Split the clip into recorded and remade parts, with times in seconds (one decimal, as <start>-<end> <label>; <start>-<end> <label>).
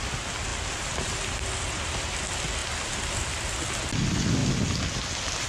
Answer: 0.0-5.5 recorded